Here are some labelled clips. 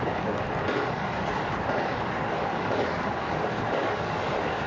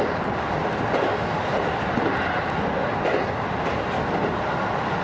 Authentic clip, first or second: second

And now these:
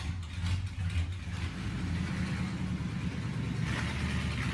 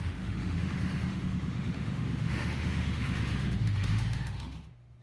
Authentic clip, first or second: first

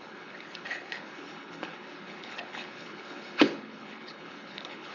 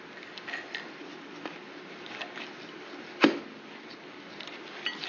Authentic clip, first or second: second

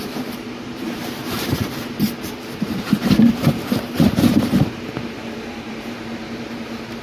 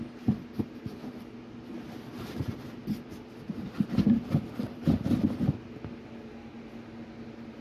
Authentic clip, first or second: second